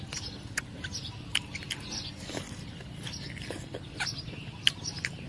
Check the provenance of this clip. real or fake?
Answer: real